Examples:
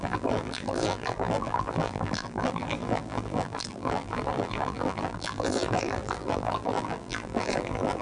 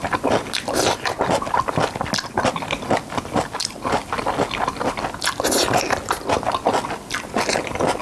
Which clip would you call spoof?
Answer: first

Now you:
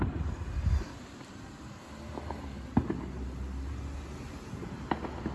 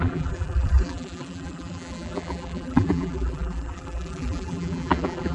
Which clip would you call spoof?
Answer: second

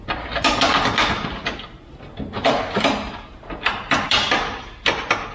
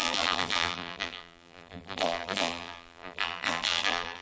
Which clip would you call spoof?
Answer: second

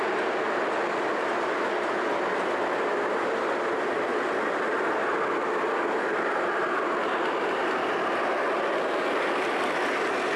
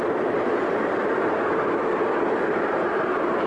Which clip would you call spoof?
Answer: second